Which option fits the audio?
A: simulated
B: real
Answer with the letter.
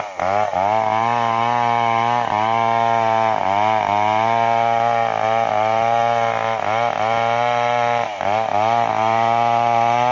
B